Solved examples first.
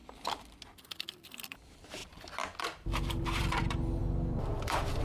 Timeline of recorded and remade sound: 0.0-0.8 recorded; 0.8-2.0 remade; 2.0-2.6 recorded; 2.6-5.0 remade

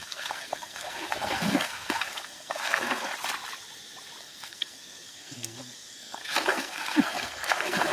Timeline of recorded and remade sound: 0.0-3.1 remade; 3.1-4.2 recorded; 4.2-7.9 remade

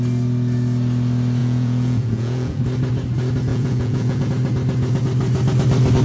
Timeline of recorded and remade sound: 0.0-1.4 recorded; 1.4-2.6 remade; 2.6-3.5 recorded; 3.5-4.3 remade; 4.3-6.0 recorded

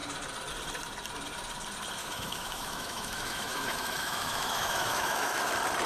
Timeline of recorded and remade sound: 0.0-2.0 recorded; 2.0-5.5 remade; 5.5-5.9 recorded